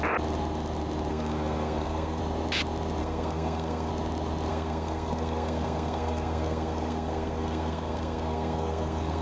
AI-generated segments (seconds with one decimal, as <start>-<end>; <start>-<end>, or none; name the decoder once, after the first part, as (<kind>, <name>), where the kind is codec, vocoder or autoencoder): 1.1-2.2 (codec, SNAC); 3.0-3.9; 4.5-9.2